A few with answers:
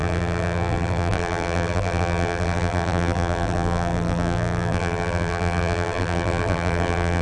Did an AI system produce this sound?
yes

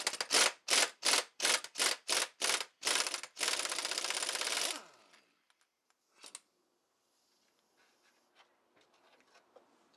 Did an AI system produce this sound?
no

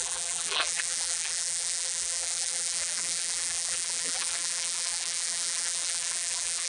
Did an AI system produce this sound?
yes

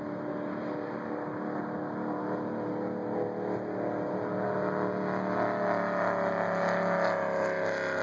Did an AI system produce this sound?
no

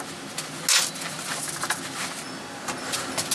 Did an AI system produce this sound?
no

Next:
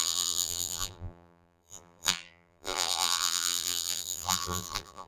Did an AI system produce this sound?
yes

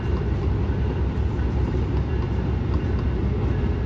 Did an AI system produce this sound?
no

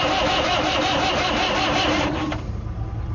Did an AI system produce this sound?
yes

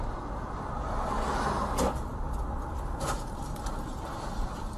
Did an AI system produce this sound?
yes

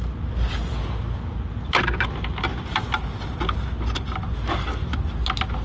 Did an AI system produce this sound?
no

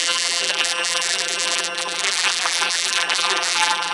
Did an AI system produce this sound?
yes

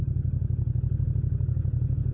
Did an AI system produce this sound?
no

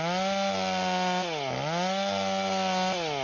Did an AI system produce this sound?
no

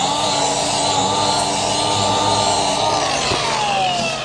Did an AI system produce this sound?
no